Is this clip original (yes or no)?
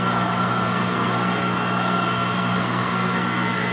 no